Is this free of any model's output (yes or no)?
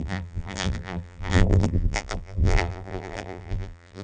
no